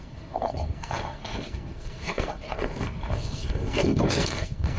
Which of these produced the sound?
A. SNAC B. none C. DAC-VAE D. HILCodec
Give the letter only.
A